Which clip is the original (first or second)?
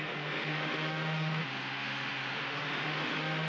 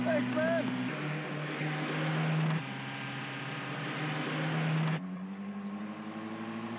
second